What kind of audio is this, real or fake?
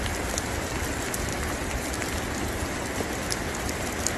real